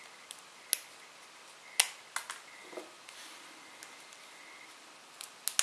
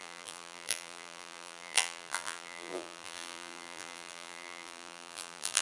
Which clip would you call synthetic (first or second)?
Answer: second